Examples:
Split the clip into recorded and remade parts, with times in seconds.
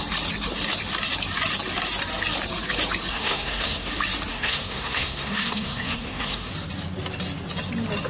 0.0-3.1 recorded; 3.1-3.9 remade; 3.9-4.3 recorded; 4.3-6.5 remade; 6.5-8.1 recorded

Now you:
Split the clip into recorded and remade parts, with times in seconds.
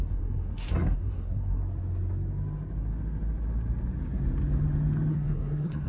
0.0-1.6 remade; 1.6-5.1 recorded; 5.1-5.9 remade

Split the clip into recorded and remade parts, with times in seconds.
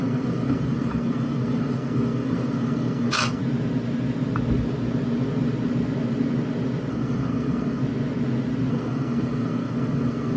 0.0-3.4 remade; 3.4-6.9 recorded; 6.9-7.8 remade; 7.8-8.7 recorded; 8.7-10.4 remade